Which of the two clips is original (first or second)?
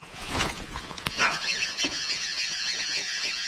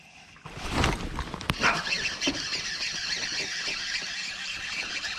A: second